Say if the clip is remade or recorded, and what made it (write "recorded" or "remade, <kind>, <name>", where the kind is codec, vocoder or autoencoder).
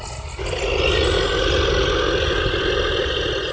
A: recorded